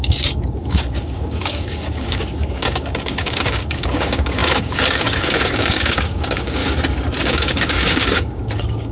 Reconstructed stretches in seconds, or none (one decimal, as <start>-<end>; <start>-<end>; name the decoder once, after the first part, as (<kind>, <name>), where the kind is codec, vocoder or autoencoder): 0.0-6.6 (codec, DAC); 7.2-8.9

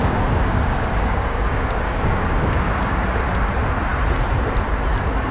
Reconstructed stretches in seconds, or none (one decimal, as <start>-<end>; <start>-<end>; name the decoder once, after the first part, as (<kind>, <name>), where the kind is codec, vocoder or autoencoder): 0.0-3.2 (codec, DAC)

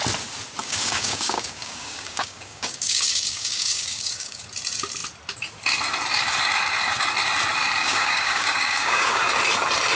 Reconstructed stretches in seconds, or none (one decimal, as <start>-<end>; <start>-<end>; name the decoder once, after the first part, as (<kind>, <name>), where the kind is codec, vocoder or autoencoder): 0.6-4.4 (codec, DAC); 7.8-9.2

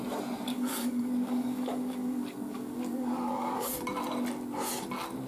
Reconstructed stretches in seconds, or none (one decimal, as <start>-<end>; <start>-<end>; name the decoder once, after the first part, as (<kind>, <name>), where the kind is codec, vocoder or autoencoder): 0.5-3.7 (codec, DAC)

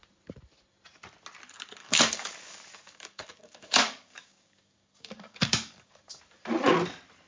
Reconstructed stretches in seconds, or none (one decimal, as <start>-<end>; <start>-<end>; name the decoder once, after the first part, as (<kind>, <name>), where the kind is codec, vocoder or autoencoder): 1.8-6.2 (codec, DAC)

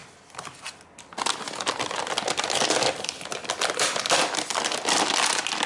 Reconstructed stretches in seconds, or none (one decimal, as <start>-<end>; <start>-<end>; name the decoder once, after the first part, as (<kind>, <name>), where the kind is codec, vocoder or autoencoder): none